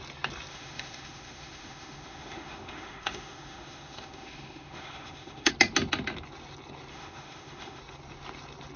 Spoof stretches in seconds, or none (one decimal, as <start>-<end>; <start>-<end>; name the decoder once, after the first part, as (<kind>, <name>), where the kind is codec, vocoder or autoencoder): 0.5-5.5 (autoencoder, DAC-VAE); 6.9-7.8